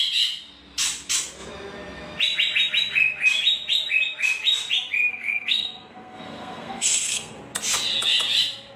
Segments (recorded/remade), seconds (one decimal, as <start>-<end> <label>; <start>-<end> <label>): 0.0-5.1 recorded; 5.1-7.4 remade; 7.4-8.8 recorded